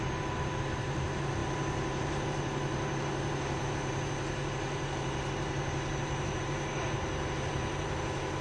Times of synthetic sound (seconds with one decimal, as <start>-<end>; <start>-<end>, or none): 0.0-8.4